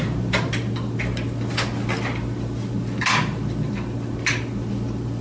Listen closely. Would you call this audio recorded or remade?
recorded